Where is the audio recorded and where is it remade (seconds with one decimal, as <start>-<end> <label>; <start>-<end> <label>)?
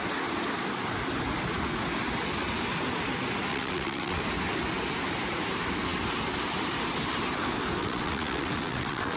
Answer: 0.0-3.5 recorded; 3.5-4.2 remade; 4.2-7.8 recorded; 7.8-9.2 remade